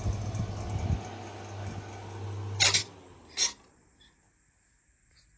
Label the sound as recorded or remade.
recorded